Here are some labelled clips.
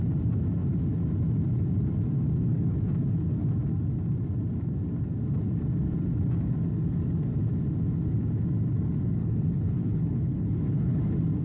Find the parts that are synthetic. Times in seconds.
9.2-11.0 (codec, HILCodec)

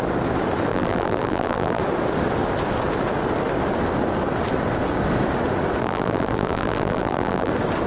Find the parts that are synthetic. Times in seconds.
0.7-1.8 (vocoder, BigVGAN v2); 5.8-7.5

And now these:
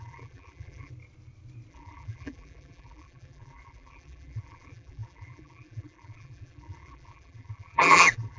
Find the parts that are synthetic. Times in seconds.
0.0-0.9 (vocoder, BigVGAN v2); 1.7-8.4